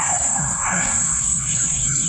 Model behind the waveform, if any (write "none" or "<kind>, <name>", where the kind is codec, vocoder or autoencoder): codec, SNAC